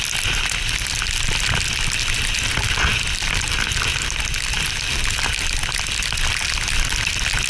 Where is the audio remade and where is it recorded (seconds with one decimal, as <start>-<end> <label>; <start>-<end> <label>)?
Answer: 0.0-7.5 recorded